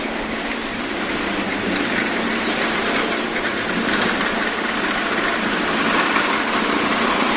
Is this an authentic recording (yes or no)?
no